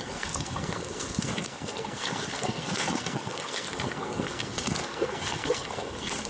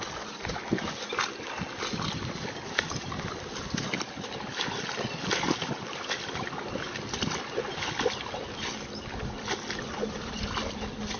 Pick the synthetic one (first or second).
first